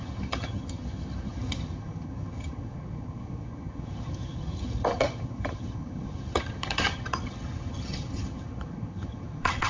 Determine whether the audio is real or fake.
fake